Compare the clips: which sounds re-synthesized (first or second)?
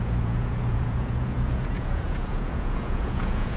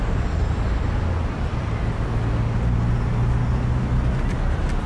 first